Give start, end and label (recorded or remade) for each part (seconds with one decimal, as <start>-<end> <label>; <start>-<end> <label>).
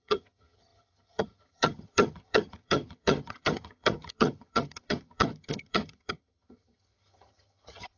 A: 0.0-8.0 remade